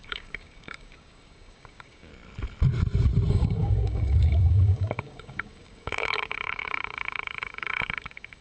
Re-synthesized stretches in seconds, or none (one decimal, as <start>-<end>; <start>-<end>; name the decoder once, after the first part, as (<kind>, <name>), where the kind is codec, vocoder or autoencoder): 0.0-2.1 (codec, DAC); 3.3-8.4